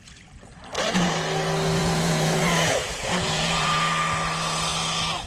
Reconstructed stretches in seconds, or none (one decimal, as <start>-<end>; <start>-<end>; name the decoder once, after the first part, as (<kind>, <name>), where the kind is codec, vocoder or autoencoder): 1.8-3.9 (vocoder, Vocos)